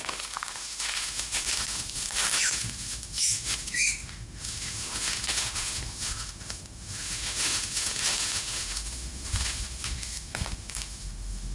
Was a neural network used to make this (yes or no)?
yes